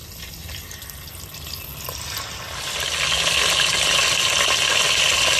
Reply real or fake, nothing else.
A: real